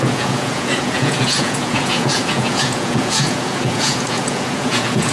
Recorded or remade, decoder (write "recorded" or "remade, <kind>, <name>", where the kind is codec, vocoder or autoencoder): remade, vocoder, Vocos